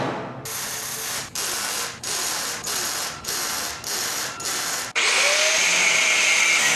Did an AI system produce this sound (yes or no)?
no